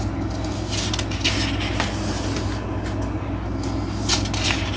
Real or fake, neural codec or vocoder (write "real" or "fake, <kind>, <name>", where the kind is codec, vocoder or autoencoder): real